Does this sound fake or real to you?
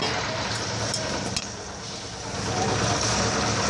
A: real